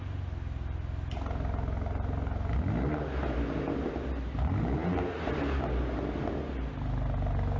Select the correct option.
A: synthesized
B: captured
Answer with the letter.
B